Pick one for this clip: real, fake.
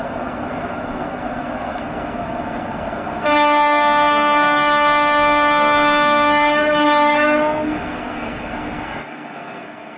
fake